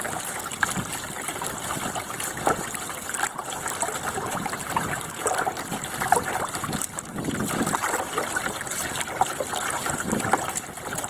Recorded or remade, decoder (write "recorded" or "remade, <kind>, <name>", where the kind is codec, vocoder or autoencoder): recorded